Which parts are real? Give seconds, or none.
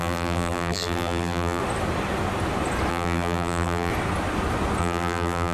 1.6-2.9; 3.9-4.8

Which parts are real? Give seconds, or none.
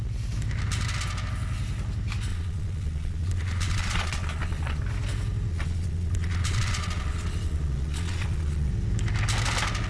0.0-2.3; 4.8-5.5; 8.7-9.9